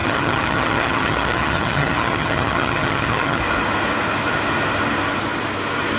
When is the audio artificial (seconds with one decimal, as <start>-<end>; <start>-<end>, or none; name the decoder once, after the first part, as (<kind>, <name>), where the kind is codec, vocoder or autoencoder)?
0.0-3.4 (vocoder, HiFi-GAN)